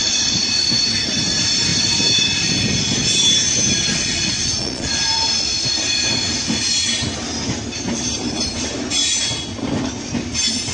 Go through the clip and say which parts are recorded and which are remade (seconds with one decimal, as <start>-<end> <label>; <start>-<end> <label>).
0.0-0.5 remade; 0.5-3.9 recorded; 3.9-4.9 remade; 4.9-10.7 recorded